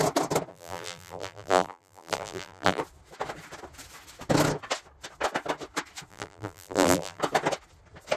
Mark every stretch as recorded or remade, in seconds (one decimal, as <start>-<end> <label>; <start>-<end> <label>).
0.0-0.5 recorded; 0.5-2.8 remade; 2.8-6.1 recorded; 6.1-7.2 remade; 7.2-8.2 recorded

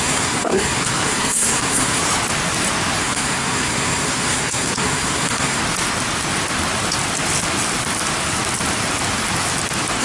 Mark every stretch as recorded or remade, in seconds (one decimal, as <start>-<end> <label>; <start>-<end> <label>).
0.0-2.0 remade; 2.0-3.0 recorded; 3.0-5.6 remade; 5.6-10.0 recorded

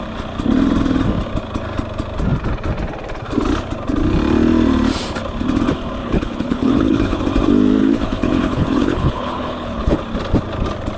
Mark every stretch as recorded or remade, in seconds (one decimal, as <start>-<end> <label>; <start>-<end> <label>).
0.0-6.0 recorded; 6.0-7.2 remade; 7.2-7.8 recorded; 7.8-10.0 remade; 10.0-11.0 recorded

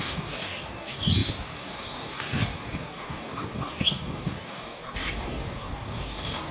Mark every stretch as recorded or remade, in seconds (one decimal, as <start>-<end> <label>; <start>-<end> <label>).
0.0-6.5 remade

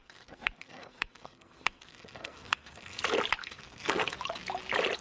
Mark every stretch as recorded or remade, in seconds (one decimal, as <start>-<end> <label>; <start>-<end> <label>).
0.0-3.0 remade; 3.0-3.4 recorded; 3.4-4.2 remade; 4.2-5.0 recorded

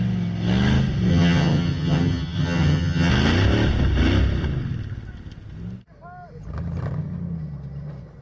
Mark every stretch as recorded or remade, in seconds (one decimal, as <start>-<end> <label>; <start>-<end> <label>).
0.0-1.1 recorded; 1.1-3.1 remade; 3.1-8.2 recorded

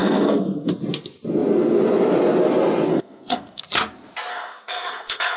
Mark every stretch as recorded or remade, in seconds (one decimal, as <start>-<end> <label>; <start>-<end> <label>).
0.0-0.7 remade; 0.7-2.9 recorded; 2.9-3.6 remade; 3.6-4.3 recorded; 4.3-5.4 remade

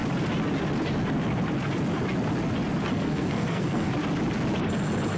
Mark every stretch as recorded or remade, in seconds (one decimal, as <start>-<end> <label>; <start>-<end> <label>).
0.0-2.9 recorded; 2.9-3.9 remade; 3.9-5.2 recorded